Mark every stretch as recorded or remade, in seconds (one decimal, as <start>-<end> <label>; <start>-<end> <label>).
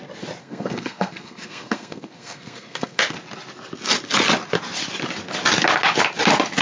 0.0-0.4 recorded; 0.4-3.0 remade; 3.0-6.6 recorded